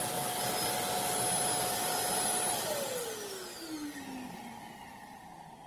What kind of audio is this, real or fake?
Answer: real